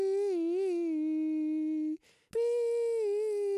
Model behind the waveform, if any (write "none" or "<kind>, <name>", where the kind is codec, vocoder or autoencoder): none